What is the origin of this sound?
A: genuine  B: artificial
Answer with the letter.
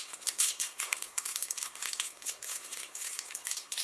B